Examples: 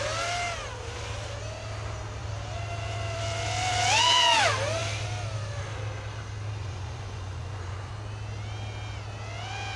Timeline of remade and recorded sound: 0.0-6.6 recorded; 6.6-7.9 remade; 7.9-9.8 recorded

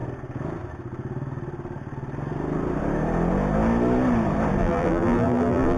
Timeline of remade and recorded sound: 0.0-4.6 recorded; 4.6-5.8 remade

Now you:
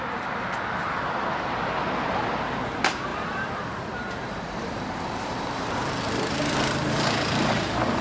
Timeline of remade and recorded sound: 0.0-3.1 recorded; 3.1-8.0 remade

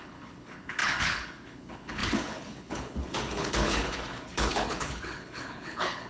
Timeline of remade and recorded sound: 0.0-6.1 remade